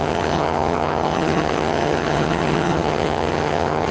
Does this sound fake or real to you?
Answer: fake